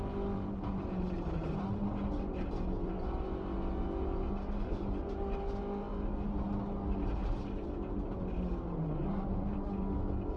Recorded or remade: recorded